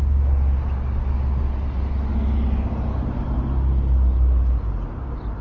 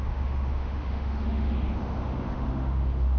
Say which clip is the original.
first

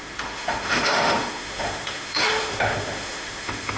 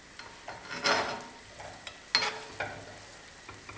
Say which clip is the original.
second